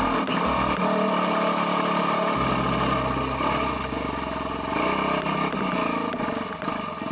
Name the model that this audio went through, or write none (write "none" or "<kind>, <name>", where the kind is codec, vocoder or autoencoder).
none